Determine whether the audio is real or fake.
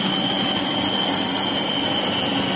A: real